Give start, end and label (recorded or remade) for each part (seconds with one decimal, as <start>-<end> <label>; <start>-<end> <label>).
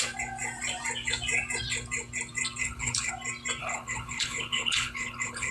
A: 0.0-2.6 recorded; 2.6-3.1 remade; 3.1-3.6 recorded; 3.6-5.5 remade